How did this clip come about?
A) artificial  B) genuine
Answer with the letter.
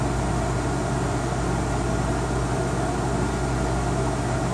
B